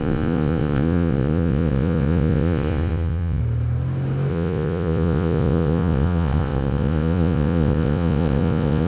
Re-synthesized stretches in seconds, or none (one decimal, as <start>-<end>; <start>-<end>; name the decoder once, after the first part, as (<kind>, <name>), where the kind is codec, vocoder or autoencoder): 0.0-3.4 (vocoder, Vocos); 4.3-8.9